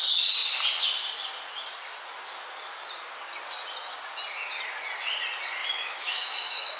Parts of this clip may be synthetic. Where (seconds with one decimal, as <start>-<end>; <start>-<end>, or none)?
5.6-6.8